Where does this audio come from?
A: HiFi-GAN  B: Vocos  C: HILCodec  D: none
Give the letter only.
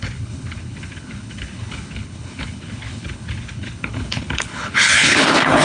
C